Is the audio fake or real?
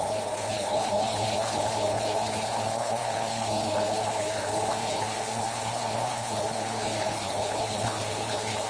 fake